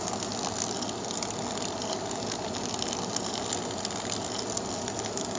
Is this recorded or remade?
recorded